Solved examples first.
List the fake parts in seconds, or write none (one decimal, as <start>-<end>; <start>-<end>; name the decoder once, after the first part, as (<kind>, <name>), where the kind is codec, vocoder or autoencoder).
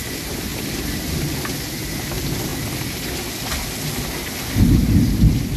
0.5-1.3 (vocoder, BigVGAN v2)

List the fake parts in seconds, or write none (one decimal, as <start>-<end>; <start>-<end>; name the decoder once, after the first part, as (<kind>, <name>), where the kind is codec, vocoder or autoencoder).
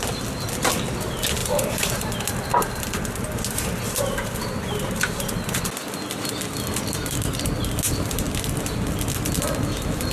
1.4-2.2 (vocoder, BigVGAN v2)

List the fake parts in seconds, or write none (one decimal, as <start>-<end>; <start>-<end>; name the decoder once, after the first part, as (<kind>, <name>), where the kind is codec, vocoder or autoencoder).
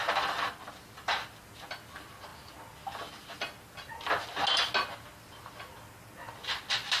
none